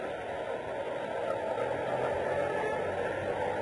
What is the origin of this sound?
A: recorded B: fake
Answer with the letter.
A